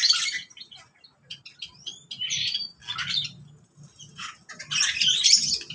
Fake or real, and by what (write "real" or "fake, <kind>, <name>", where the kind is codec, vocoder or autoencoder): real